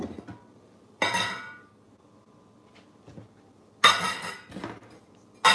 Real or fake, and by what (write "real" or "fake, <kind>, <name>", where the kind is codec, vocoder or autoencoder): real